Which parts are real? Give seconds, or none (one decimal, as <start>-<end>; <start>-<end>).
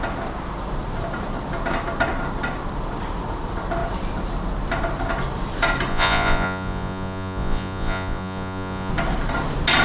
0.0-5.9; 8.9-9.8